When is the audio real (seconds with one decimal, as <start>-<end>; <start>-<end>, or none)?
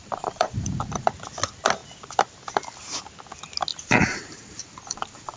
1.1-3.7